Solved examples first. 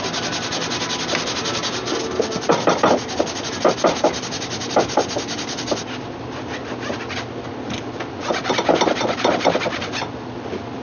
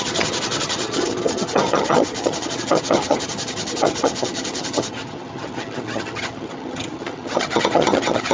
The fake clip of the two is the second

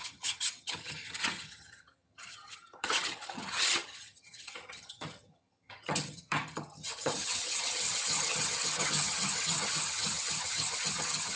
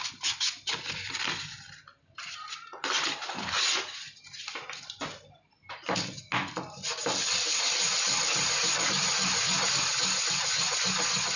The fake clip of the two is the first